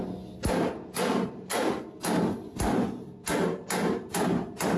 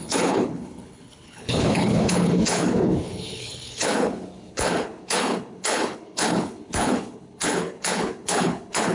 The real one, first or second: first